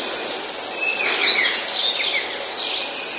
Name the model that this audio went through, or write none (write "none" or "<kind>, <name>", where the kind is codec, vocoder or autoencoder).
none